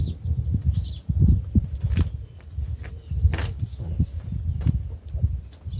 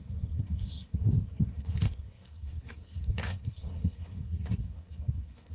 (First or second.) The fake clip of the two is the second